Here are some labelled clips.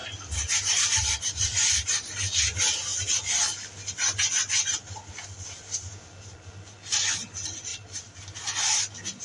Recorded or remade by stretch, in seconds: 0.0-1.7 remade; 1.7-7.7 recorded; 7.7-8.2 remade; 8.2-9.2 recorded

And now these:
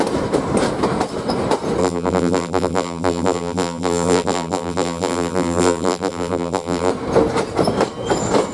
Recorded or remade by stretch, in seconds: 0.0-1.8 recorded; 1.8-6.9 remade; 6.9-8.5 recorded

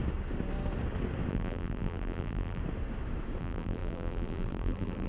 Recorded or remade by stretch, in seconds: 0.0-1.3 recorded; 1.3-2.6 remade; 2.6-3.4 recorded; 3.4-5.1 remade

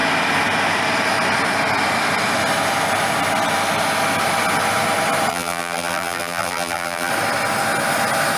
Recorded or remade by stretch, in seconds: 0.0-5.3 recorded; 5.3-7.1 remade; 7.1-8.4 recorded

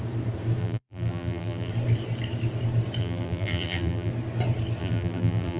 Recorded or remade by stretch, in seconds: 0.0-0.6 recorded; 0.6-1.7 remade; 1.7-3.0 recorded; 3.0-4.1 remade; 4.1-4.8 recorded; 4.8-5.6 remade

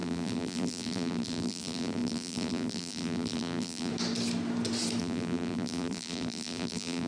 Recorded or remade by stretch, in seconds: 0.0-3.9 remade; 3.9-5.0 recorded; 5.0-7.1 remade

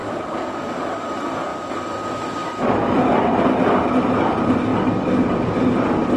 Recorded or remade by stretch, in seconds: 0.0-1.0 remade; 1.0-1.5 recorded; 1.5-3.7 remade; 3.7-4.7 recorded; 4.7-6.2 remade

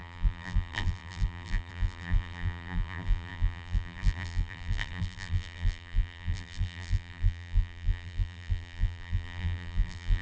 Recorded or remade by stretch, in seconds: 0.0-10.2 remade